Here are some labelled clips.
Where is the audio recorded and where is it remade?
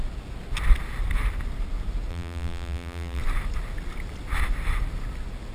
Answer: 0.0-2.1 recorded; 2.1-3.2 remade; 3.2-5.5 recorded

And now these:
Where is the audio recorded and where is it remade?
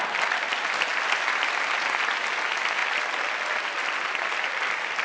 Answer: 0.0-5.0 recorded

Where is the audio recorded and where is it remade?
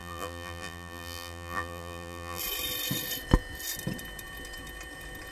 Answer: 0.0-2.4 remade; 2.4-5.3 recorded